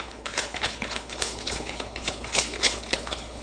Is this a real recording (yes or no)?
no